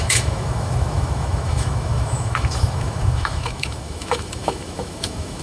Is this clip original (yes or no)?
no